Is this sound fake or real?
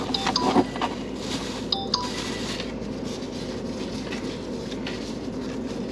real